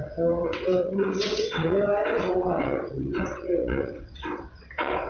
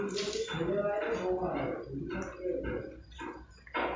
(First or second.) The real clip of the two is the second